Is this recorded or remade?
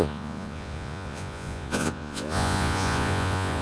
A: remade